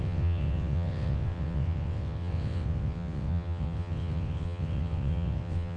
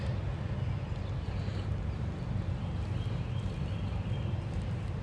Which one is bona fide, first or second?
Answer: second